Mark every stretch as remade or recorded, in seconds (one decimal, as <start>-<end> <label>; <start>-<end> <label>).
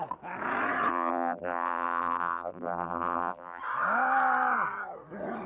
0.0-0.9 recorded; 0.9-3.6 remade; 3.6-5.5 recorded